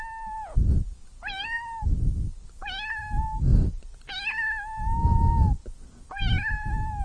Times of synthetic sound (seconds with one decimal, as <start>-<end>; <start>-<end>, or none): 3.5-4.1